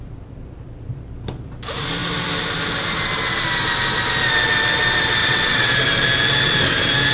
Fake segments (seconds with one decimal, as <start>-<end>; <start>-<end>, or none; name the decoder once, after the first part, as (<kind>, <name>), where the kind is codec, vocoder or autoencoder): 5.2-5.7 (vocoder, WaveNeXt)